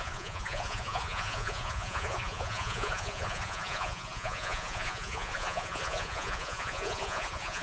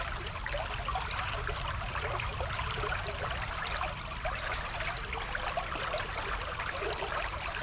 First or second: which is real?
second